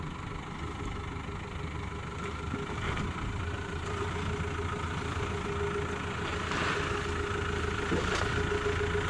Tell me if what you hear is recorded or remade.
recorded